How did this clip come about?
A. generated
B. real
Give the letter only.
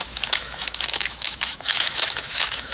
A